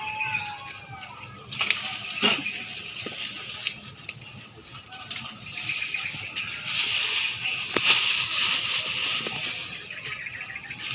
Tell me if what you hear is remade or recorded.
recorded